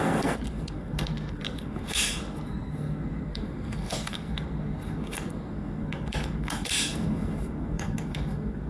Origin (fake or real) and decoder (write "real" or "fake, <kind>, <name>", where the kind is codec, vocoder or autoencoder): fake, codec, SNAC